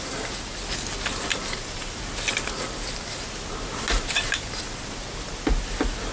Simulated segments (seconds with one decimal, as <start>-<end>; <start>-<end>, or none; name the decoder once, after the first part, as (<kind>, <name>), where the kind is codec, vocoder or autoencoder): none